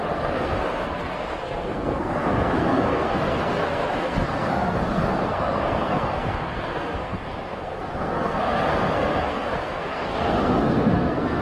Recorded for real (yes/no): no